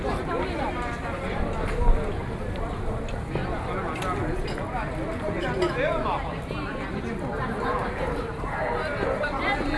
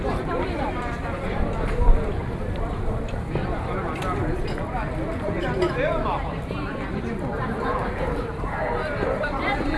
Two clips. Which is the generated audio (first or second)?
second